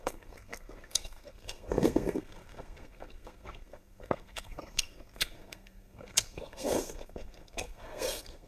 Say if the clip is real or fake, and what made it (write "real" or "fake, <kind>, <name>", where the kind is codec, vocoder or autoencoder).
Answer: fake, codec, SNAC